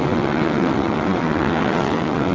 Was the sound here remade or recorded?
remade